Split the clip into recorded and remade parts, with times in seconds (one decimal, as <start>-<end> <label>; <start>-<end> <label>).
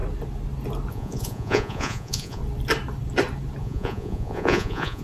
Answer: 0.0-0.9 recorded; 0.9-2.4 remade; 2.4-3.6 recorded; 3.6-5.0 remade